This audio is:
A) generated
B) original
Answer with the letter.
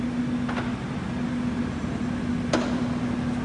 B